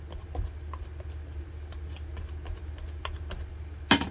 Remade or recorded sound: recorded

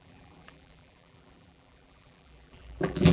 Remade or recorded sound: remade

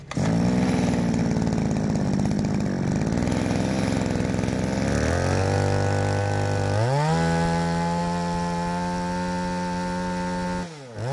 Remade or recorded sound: recorded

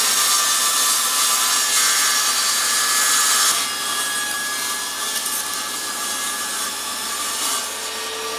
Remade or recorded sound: recorded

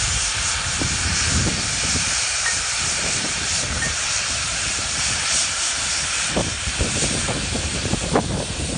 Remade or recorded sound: remade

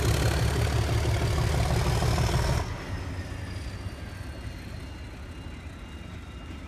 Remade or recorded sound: recorded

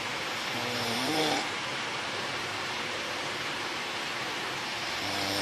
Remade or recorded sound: remade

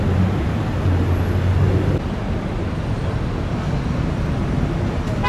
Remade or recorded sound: recorded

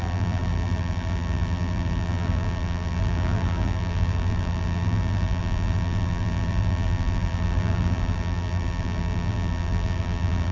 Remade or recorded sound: remade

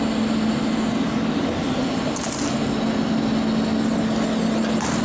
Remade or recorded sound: recorded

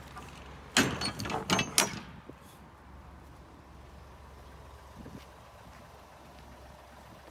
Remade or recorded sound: recorded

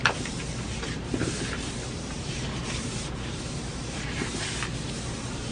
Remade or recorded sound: remade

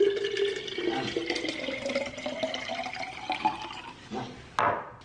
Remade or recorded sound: recorded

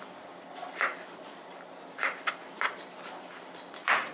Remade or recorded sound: remade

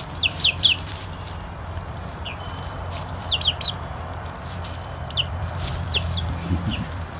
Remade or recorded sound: remade